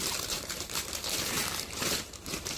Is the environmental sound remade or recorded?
remade